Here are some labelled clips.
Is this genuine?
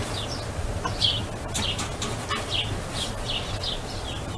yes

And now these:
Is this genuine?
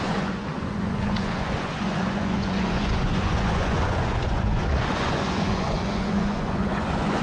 no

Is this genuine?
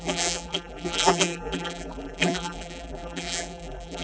no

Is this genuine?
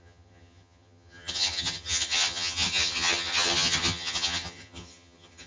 no